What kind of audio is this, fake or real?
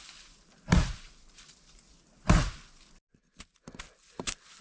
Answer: real